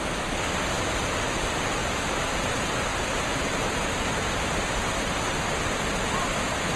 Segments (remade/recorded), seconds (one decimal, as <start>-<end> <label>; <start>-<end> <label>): 0.0-1.8 recorded; 1.8-2.3 remade; 2.3-2.9 recorded; 2.9-5.1 remade; 5.1-6.8 recorded